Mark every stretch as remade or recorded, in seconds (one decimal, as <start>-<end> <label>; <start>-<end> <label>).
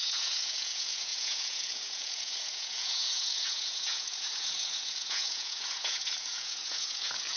0.0-7.4 remade